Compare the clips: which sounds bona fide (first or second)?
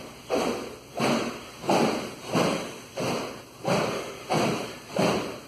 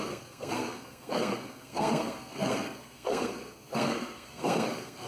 first